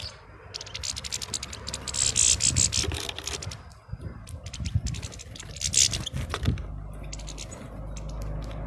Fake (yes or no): no